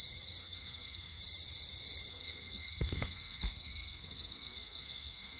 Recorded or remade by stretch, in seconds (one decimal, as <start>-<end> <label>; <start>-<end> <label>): 0.0-0.4 recorded; 0.4-1.2 remade; 1.2-2.1 recorded; 2.1-5.4 remade